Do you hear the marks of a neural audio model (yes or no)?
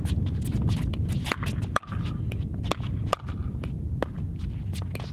no